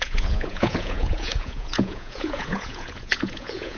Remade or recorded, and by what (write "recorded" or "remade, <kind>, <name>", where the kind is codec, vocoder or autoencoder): remade, vocoder, Vocos